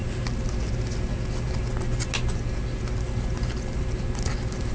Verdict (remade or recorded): recorded